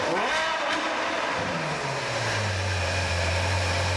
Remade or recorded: recorded